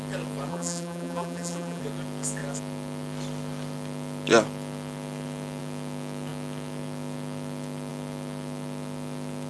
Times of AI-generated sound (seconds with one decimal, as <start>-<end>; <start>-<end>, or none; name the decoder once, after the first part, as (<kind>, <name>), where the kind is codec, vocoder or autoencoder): 0.5-1.8 (vocoder, BigVGAN v2)

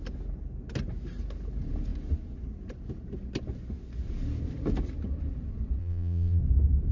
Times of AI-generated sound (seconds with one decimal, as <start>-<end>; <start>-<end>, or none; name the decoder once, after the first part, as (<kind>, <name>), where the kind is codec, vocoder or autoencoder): 5.8-6.4 (vocoder, BigVGAN v2)

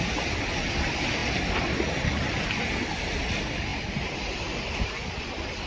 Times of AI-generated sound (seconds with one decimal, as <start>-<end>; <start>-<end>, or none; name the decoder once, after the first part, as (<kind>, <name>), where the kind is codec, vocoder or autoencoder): none

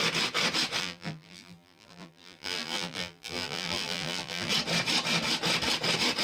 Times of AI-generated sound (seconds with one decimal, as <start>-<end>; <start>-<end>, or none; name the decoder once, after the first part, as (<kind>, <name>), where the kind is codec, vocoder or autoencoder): 0.8-4.5 (vocoder, BigVGAN v2)

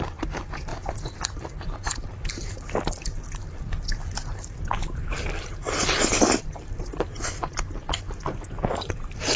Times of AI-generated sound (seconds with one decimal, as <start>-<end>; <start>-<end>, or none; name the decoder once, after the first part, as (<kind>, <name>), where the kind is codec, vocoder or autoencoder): 0.7-1.7 (vocoder, BigVGAN v2)

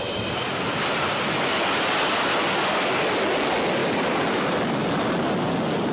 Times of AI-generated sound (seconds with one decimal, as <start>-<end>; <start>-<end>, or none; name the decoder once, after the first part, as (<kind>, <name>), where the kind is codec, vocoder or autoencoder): 3.8-5.1 (vocoder, BigVGAN v2)